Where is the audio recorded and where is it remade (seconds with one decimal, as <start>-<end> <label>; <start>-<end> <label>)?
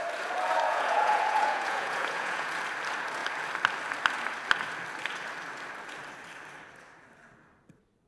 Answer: 0.0-0.7 recorded; 0.7-2.5 remade; 2.5-8.1 recorded